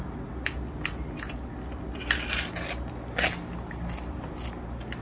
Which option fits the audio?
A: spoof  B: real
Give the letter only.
B